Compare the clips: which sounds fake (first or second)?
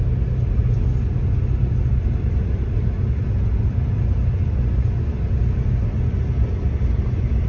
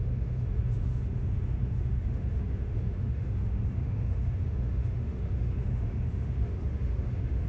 second